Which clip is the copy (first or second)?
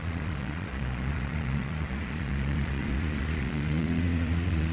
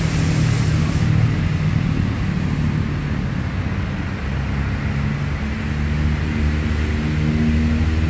first